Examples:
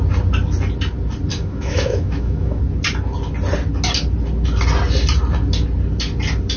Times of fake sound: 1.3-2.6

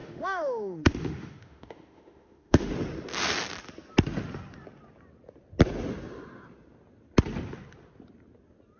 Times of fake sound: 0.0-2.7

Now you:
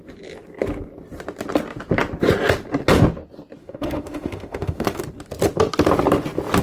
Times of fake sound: 3.6-5.0

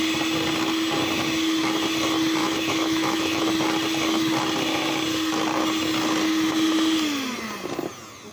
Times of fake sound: 2.4-3.4

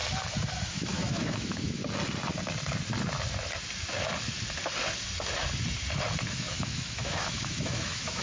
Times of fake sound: 0.7-1.8; 6.3-8.2

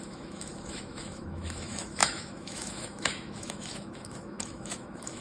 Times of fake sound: 0.0-5.2

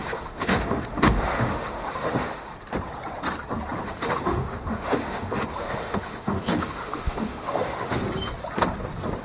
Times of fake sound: 0.0-2.5; 3.8-8.0

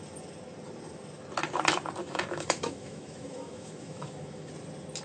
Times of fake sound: 2.0-4.5